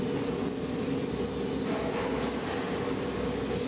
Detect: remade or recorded recorded